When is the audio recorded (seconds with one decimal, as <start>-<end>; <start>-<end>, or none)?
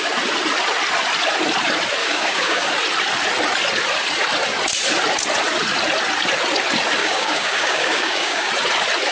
0.0-2.0; 2.7-7.0; 8.5-9.1